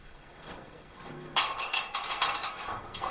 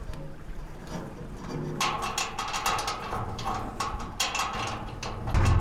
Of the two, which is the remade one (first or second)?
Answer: first